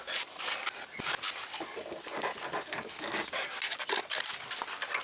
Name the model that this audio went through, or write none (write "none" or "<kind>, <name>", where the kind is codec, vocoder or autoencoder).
none